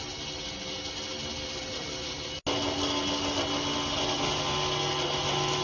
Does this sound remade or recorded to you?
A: recorded